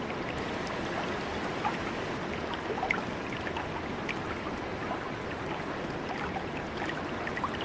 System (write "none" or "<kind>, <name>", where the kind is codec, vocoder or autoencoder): none